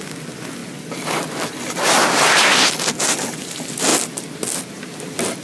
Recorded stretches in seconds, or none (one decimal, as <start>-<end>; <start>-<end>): 0.0-5.4

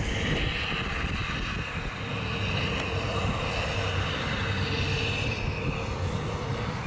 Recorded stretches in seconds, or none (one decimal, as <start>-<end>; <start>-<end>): 0.0-6.9

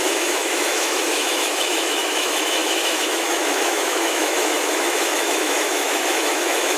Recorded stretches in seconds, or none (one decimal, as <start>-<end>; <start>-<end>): none

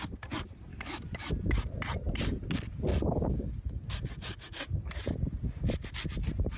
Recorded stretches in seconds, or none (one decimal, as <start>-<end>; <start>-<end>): 0.0-0.7; 1.3-6.6

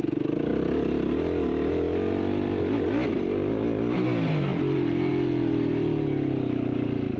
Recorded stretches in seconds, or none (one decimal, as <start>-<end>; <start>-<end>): 0.0-7.2

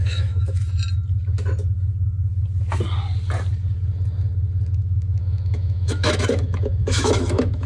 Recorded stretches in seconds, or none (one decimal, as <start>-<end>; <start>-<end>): 0.6-4.7

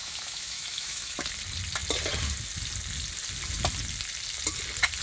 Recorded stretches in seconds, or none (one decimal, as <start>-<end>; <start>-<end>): 1.3-5.0